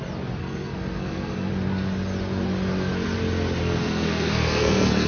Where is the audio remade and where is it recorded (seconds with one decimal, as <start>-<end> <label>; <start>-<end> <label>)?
0.0-0.4 recorded; 0.4-1.5 remade; 1.5-3.6 recorded; 3.6-5.1 remade